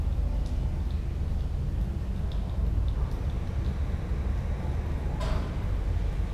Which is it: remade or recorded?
recorded